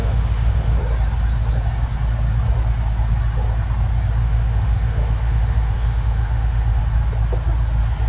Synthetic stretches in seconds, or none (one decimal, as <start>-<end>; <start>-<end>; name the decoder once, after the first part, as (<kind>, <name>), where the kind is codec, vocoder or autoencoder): 0.0-0.8 (autoencoder, DAC-VAE); 4.2-6.8